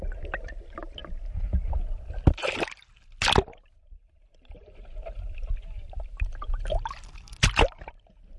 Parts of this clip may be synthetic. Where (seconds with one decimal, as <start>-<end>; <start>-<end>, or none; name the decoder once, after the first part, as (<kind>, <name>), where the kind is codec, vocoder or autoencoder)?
none